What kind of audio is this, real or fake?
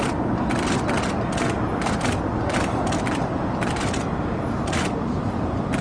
real